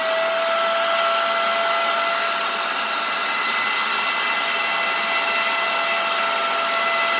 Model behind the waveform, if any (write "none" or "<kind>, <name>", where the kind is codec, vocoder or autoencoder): none